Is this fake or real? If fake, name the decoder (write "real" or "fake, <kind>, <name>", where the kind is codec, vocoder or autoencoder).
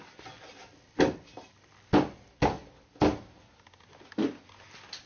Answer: real